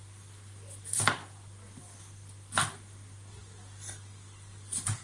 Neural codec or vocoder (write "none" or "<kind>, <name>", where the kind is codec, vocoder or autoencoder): none